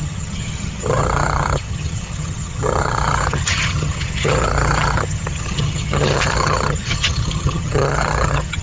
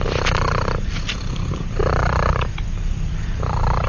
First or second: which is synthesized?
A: first